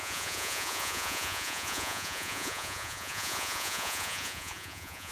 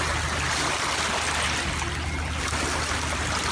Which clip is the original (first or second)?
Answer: second